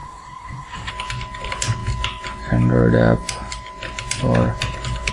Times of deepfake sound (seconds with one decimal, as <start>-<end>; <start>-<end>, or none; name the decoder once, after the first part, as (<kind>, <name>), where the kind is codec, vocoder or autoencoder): 0.0-0.9 (codec, SNAC)